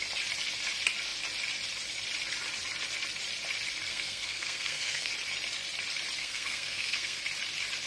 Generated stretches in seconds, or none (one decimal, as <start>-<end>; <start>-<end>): 3.9-5.1; 6.2-7.2

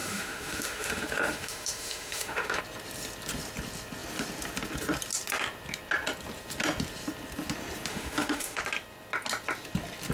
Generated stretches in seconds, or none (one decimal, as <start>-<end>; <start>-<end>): 0.0-2.6; 7.9-8.6

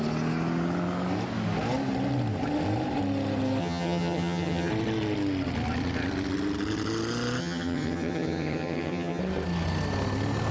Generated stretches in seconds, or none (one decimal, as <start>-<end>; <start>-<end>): 3.6-4.7; 7.4-9.2